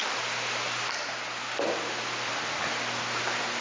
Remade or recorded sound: recorded